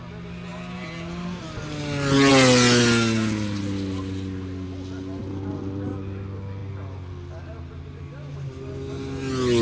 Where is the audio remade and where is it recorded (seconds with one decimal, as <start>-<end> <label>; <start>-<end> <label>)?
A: 0.0-9.6 recorded

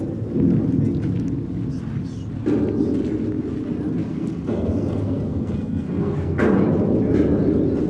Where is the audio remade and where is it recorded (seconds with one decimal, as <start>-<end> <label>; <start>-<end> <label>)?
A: 0.0-4.0 recorded; 4.0-6.4 remade; 6.4-7.9 recorded

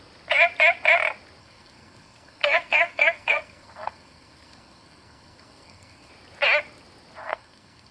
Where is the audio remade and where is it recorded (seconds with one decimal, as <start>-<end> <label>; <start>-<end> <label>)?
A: 0.0-1.4 recorded; 1.4-6.1 remade; 6.1-7.2 recorded; 7.2-7.9 remade

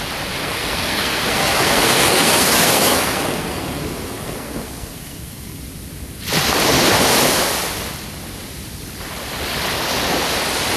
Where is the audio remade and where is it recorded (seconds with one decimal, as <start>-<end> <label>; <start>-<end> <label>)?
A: 0.0-0.4 recorded; 0.4-5.6 remade; 5.6-10.8 recorded

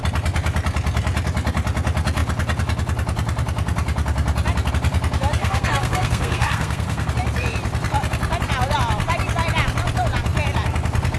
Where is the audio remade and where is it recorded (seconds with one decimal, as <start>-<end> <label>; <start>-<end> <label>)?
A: 0.0-5.4 recorded; 5.4-7.1 remade; 7.1-11.2 recorded

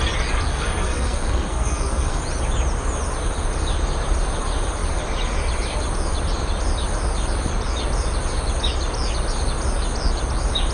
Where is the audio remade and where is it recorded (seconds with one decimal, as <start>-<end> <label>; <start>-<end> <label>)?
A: 0.0-0.5 recorded; 0.5-2.2 remade; 2.2-10.7 recorded

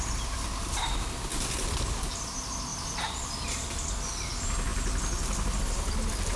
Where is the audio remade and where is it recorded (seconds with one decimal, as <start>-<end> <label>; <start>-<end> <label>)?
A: 0.0-6.4 recorded